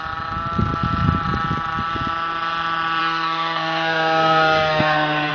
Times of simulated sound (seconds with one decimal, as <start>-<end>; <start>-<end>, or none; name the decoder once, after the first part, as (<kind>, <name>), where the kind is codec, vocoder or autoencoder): 3.0-5.3 (codec, SNAC)